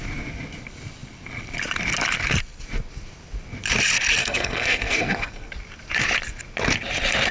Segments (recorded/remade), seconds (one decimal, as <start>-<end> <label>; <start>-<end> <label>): 0.0-4.2 recorded; 4.2-5.5 remade; 5.5-7.3 recorded